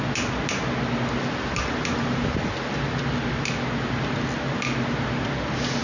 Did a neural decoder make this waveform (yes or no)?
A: no